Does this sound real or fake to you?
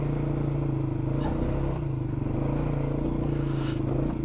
real